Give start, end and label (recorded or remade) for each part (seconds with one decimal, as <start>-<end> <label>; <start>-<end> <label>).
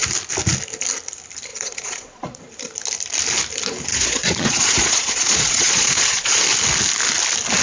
0.0-1.5 recorded; 1.5-2.4 remade; 2.4-3.9 recorded; 3.9-6.4 remade; 6.4-7.6 recorded